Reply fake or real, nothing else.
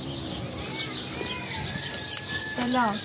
real